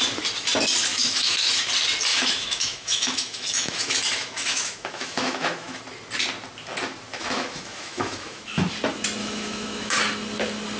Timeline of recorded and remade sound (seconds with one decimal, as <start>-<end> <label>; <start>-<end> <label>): 0.0-0.9 recorded; 0.9-1.7 remade; 1.7-2.1 recorded; 2.1-5.8 remade; 5.8-7.1 recorded; 7.1-8.7 remade; 8.7-9.2 recorded; 9.2-10.0 remade; 10.0-10.8 recorded